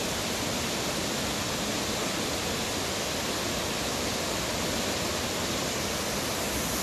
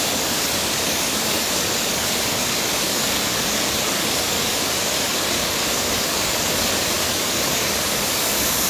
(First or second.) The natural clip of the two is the first